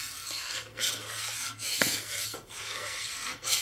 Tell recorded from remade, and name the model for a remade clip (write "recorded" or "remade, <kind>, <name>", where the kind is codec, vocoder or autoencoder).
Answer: remade, codec, SNAC